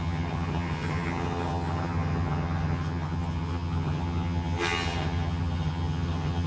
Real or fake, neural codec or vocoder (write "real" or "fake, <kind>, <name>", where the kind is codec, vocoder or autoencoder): fake, vocoder, HiFi-GAN